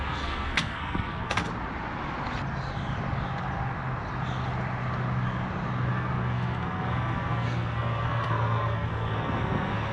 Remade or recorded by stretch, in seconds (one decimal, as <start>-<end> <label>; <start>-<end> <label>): 0.0-1.5 remade; 1.5-5.9 recorded; 5.9-9.9 remade